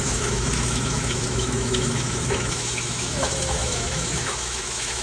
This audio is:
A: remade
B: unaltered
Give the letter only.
A